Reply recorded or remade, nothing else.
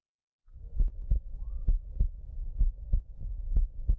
recorded